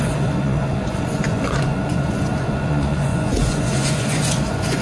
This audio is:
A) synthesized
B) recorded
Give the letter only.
A